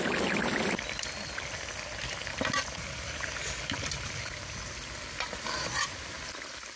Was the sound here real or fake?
real